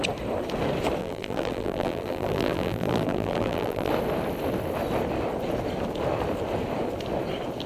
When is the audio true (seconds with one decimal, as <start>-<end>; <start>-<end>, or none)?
0.0-1.0; 3.9-7.7